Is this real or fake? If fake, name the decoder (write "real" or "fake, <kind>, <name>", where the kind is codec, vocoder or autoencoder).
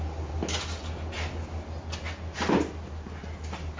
real